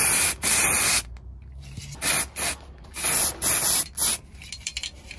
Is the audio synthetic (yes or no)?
no